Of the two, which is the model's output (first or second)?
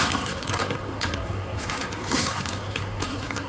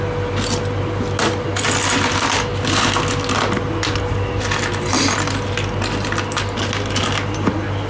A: first